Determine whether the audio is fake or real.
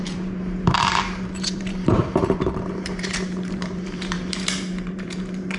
fake